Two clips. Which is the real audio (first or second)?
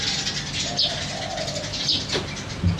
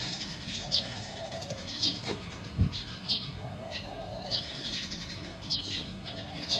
first